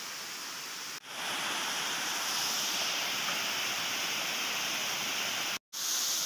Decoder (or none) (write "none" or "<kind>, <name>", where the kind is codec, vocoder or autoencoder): none